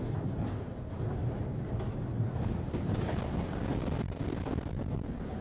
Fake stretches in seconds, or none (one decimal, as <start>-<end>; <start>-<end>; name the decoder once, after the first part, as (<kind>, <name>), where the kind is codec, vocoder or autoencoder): 1.2-3.2 (vocoder, BigVGAN v2)